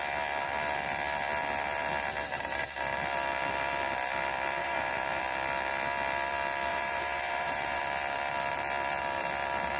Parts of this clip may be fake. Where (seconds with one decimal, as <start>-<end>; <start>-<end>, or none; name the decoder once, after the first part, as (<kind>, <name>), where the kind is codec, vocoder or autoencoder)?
4.6-5.2 (vocoder, BigVGAN v2); 6.7-7.8